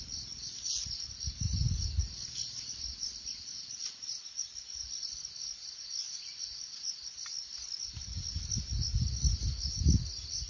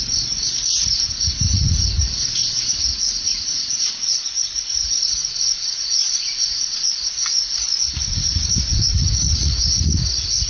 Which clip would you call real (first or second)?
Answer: first